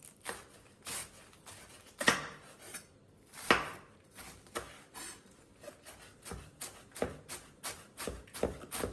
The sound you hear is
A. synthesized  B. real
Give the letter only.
B